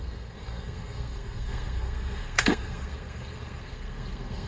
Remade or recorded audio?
remade